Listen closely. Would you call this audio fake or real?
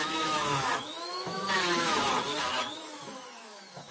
fake